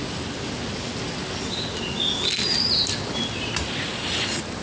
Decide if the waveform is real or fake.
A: real